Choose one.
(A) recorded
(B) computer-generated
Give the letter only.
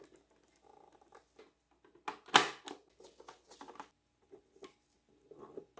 A